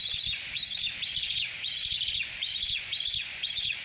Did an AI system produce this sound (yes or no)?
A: yes